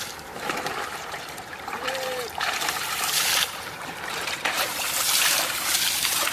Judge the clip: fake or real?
fake